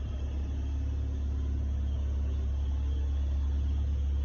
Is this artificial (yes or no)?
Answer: no